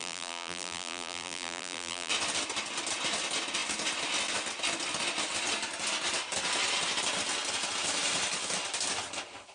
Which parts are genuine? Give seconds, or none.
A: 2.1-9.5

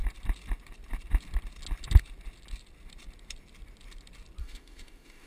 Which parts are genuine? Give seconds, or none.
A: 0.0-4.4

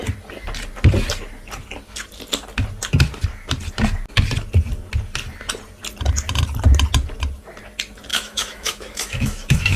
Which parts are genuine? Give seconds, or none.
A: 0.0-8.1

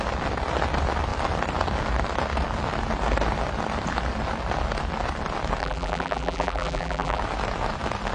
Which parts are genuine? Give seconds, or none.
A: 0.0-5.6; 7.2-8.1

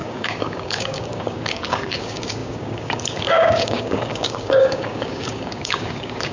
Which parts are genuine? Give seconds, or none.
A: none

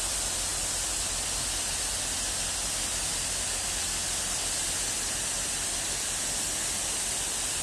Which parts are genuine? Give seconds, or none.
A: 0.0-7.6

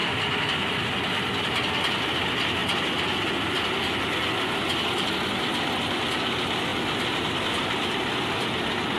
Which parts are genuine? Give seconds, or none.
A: 0.0-9.0

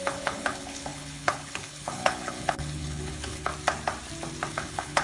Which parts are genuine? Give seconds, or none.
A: 3.5-4.5